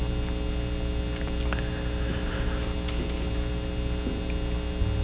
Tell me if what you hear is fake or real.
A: real